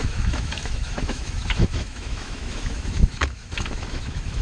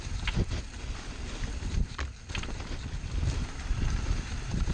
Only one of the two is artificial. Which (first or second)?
first